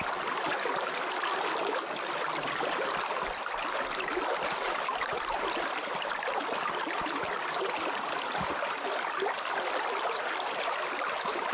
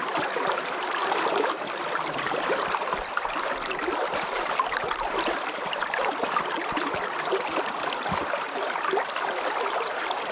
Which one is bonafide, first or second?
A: first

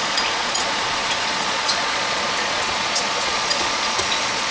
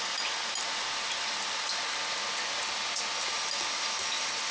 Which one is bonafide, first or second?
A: second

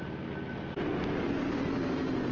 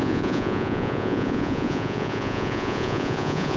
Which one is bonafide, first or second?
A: first